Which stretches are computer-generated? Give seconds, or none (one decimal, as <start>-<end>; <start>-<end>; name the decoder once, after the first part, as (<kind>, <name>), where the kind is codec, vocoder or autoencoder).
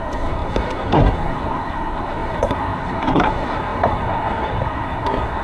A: 0.0-5.4 (codec, SNAC)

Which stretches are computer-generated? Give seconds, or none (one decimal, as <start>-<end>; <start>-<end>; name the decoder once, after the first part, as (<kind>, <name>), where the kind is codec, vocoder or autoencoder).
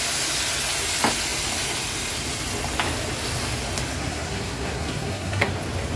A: 3.9-5.5 (codec, SNAC)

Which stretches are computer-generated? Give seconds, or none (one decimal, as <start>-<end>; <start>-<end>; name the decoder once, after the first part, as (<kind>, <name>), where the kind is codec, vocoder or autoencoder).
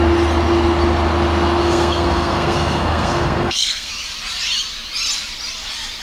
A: 1.6-3.9 (codec, SNAC)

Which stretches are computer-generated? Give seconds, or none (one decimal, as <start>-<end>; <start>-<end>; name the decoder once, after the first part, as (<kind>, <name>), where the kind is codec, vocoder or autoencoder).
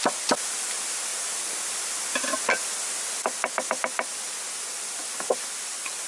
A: none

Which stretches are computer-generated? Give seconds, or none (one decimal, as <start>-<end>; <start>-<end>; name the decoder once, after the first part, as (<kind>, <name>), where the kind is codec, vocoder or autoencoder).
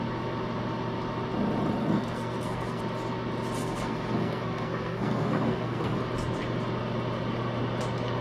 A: 1.8-2.8 (codec, SNAC); 3.6-5.9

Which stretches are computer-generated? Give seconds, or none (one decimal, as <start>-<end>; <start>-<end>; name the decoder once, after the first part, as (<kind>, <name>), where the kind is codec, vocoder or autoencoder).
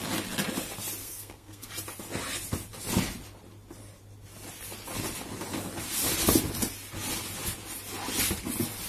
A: 1.0-1.7 (codec, SNAC)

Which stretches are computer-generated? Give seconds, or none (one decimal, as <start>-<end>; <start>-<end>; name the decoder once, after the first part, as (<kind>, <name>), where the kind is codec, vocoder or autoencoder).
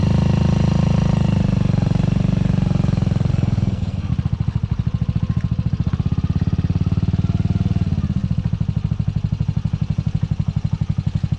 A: 3.3-4.1 (codec, SNAC)